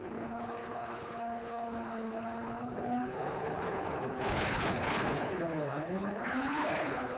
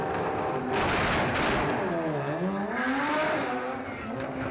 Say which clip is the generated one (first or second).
first